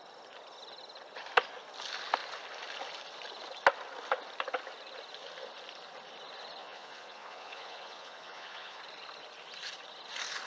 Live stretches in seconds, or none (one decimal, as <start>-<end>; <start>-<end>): 0.0-6.6; 8.8-10.5